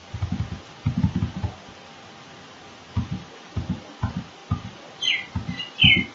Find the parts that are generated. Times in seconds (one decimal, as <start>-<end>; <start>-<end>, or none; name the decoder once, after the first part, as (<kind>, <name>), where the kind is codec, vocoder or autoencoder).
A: 4.4-5.0 (vocoder, BigVGAN v2)